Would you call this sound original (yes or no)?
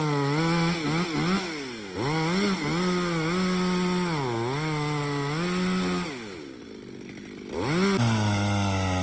yes